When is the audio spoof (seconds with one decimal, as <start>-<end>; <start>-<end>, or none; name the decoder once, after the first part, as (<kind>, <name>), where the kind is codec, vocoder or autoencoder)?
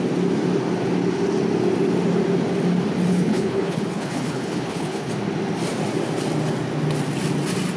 3.1-5.1 (codec, HILCodec)